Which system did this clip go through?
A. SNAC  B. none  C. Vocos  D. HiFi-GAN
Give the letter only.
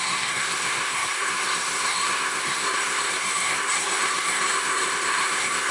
A